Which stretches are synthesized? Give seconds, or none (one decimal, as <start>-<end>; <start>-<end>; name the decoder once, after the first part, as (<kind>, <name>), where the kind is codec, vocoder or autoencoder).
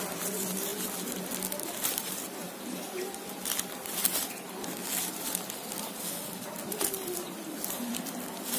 0.0-0.7 (vocoder, BigVGAN v2); 1.9-4.8; 6.6-8.6